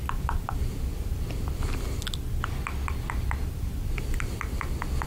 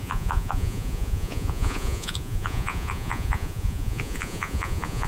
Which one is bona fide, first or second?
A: first